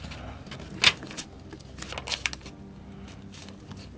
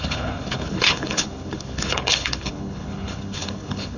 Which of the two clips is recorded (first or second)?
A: first